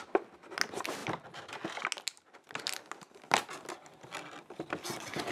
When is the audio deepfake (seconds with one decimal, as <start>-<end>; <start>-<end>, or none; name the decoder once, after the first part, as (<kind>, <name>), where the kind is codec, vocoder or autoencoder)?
none